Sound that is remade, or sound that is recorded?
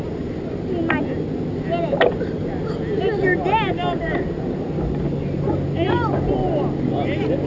recorded